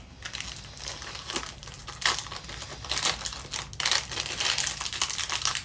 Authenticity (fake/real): real